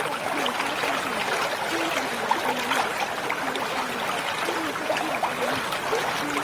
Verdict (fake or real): real